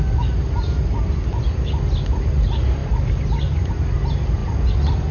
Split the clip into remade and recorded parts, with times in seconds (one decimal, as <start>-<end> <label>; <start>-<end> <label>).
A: 0.0-5.1 recorded